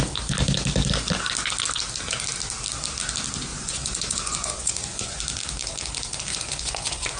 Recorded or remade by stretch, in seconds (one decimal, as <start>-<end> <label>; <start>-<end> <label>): 0.0-3.5 recorded; 3.5-5.2 remade; 5.2-6.3 recorded; 6.3-7.2 remade